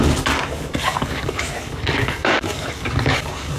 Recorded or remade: remade